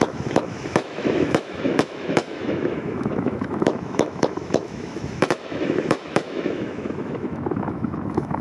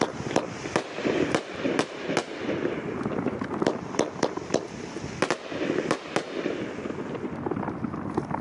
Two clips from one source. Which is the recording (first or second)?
second